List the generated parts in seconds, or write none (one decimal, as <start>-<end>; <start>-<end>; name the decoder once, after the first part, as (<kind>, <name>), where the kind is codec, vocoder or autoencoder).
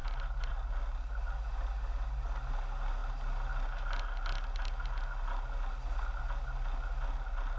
none